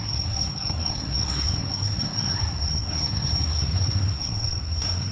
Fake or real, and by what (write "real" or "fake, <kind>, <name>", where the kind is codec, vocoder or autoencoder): fake, codec, SNAC